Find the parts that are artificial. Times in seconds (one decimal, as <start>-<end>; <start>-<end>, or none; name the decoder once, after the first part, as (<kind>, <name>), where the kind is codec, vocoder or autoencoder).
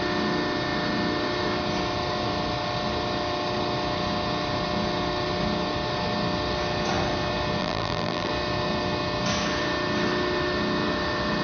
7.6-8.3 (vocoder, BigVGAN v2)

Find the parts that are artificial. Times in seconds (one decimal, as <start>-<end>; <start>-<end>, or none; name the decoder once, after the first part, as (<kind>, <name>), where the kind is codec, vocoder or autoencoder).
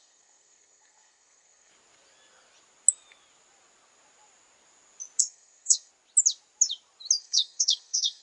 0.0-1.7 (codec, SNAC); 5.2-5.9; 7.2-8.2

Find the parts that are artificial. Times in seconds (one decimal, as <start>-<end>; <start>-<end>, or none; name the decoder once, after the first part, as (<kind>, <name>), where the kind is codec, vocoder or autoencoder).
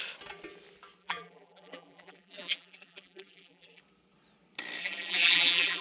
1.0-3.8 (vocoder, BigVGAN v2); 4.8-5.8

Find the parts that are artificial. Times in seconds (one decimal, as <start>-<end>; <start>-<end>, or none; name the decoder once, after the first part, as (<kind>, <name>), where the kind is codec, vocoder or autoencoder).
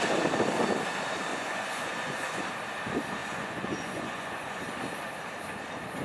1.3-2.4 (vocoder, Vocos); 3.2-4.6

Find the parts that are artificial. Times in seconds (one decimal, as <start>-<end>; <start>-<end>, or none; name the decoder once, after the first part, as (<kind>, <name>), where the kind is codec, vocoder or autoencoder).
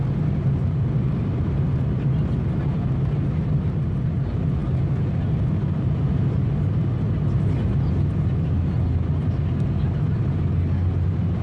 none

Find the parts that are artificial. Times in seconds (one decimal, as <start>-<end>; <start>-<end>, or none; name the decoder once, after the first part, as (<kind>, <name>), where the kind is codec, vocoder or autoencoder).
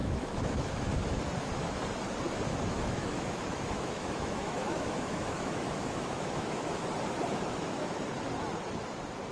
0.0-1.2 (autoencoder, DAC-VAE); 2.5-6.8; 7.3-7.9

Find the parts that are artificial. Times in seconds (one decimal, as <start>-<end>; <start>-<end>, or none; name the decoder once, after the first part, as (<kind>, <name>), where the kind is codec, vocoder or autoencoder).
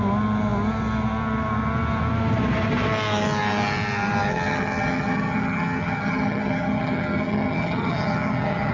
4.3-8.7 (vocoder, HiFi-GAN)